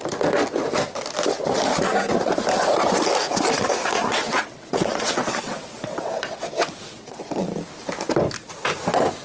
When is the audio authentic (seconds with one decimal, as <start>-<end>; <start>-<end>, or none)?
0.0-4.1; 7.4-9.2